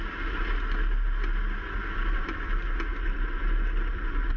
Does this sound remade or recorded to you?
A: recorded